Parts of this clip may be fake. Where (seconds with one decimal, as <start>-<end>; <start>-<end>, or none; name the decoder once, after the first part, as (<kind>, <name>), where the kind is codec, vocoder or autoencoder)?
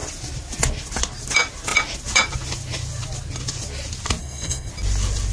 4.2-4.7 (codec, SNAC)